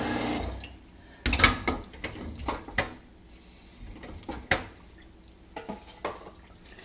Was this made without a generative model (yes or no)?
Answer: yes